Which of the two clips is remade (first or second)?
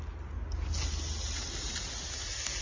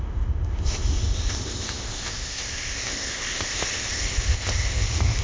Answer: second